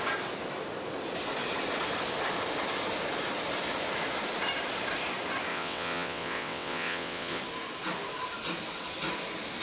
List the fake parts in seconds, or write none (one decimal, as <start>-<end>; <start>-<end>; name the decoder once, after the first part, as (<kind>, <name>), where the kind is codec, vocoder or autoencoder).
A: 5.5-7.4 (vocoder, WaveNeXt)